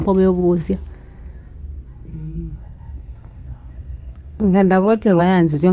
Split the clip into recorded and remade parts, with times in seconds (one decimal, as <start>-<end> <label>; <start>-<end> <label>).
0.0-2.1 recorded; 2.1-5.2 remade; 5.2-5.7 recorded